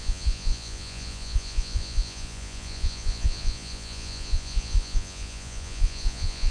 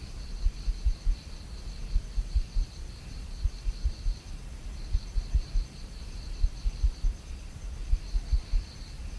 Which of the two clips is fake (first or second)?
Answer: first